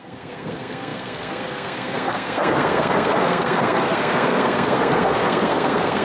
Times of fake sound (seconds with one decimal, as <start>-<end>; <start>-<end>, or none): 0.0-6.0